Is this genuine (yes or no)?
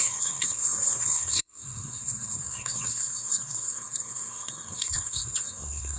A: no